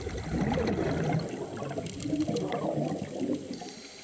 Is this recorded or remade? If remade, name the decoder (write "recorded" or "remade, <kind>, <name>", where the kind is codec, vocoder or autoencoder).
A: recorded